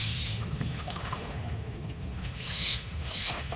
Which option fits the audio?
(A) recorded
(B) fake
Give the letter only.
B